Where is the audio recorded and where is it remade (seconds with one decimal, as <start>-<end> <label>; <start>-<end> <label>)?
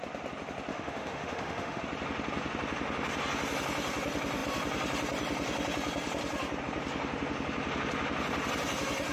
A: 0.0-0.7 recorded; 0.7-1.8 remade; 1.8-9.1 recorded